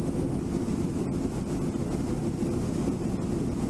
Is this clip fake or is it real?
real